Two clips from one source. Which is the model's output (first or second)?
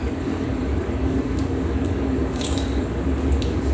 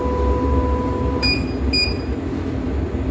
first